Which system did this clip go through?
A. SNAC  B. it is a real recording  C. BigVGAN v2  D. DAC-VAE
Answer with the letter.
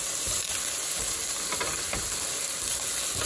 B